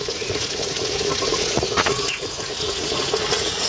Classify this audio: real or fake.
fake